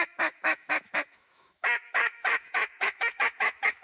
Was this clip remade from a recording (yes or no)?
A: yes